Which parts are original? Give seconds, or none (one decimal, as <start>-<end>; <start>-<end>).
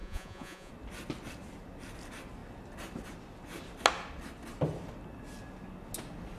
0.7-6.4